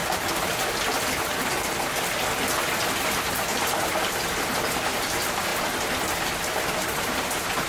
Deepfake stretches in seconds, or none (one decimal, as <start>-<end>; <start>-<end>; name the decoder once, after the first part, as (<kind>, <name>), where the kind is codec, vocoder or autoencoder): 3.0-5.5 (vocoder, BigVGAN v2); 6.5-7.7

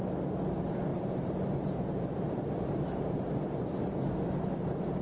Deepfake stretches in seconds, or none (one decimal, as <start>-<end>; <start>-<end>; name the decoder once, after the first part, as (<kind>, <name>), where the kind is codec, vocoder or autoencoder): 0.9-3.9 (vocoder, BigVGAN v2)

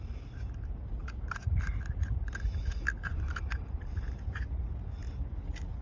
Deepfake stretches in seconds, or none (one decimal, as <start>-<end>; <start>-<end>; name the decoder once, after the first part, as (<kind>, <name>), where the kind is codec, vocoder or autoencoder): 1.0-2.3 (vocoder, BigVGAN v2); 3.0-4.6

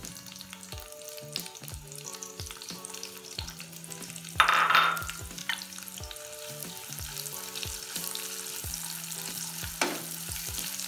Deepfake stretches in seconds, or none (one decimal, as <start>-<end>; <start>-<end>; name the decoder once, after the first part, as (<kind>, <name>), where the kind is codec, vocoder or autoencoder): 2.1-3.6 (vocoder, BigVGAN v2)

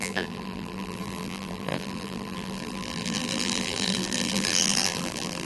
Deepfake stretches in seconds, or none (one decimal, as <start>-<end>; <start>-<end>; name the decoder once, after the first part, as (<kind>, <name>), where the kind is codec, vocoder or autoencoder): 0.0-5.5 (vocoder, BigVGAN v2)

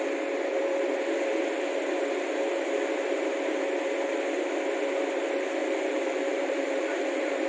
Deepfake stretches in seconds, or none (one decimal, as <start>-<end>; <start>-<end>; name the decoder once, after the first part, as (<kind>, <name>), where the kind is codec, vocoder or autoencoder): 0.5-1.4 (vocoder, BigVGAN v2); 5.6-7.5

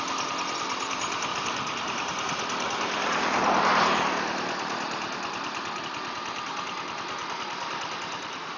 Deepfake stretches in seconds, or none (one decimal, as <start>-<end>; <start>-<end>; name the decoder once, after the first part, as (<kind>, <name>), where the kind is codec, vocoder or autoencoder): 1.3-5.8 (vocoder, BigVGAN v2); 7.2-8.6

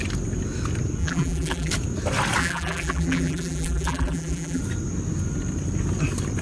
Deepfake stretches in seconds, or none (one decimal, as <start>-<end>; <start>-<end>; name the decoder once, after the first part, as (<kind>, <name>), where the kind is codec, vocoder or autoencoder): 1.0-1.7 (vocoder, BigVGAN v2); 2.4-4.6